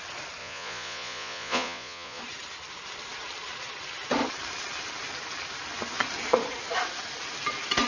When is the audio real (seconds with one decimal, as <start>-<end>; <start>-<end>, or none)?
0.0-0.4; 2.2-7.9